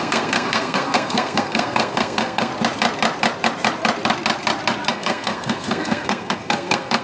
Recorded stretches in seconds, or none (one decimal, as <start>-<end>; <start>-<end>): 2.5-4.9